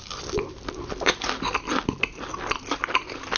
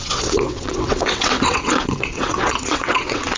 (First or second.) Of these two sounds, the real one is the first